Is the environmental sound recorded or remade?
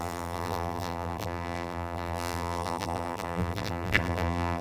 remade